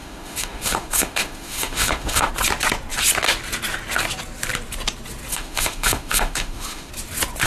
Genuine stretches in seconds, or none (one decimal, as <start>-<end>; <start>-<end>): 2.3-5.3; 6.9-7.5